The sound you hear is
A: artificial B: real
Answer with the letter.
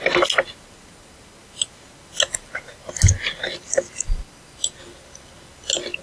B